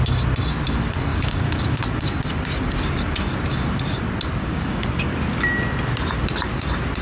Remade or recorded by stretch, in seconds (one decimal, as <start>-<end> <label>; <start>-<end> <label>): 0.0-1.1 recorded; 1.1-1.8 remade; 1.8-4.4 recorded; 4.4-5.1 remade; 5.1-7.0 recorded